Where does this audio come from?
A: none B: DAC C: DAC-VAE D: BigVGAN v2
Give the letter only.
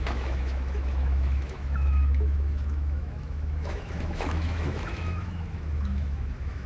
C